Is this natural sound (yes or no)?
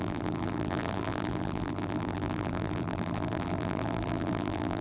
no